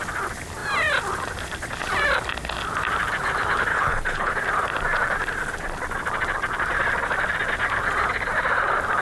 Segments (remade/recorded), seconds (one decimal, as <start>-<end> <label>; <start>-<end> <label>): 0.0-3.7 recorded; 3.7-4.3 remade; 4.3-9.0 recorded